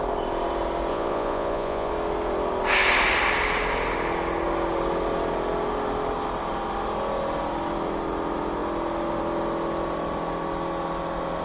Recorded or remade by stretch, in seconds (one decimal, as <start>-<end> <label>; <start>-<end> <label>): 0.0-0.9 recorded; 0.9-1.9 remade; 1.9-11.4 recorded